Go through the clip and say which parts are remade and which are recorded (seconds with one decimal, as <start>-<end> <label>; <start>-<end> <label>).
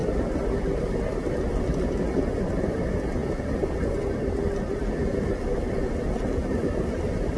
0.0-7.4 recorded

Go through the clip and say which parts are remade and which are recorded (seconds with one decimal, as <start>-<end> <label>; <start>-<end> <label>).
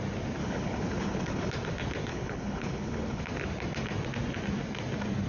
0.0-0.4 recorded; 0.4-1.5 remade; 1.5-2.1 recorded; 2.1-3.2 remade; 3.2-5.3 recorded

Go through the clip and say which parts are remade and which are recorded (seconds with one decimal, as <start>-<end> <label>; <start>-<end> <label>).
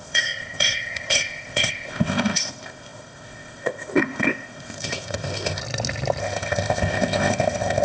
0.0-5.6 remade; 5.6-6.2 recorded; 6.2-7.8 remade